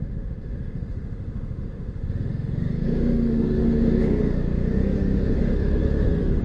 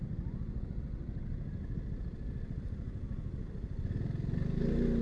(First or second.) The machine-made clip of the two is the first